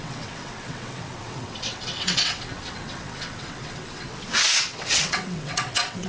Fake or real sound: fake